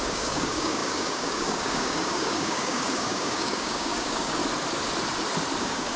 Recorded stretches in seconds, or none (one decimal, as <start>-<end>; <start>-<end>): 4.4-5.6